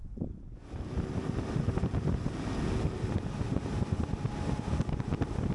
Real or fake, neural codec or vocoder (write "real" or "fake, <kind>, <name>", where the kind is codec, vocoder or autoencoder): fake, vocoder, BigVGAN v2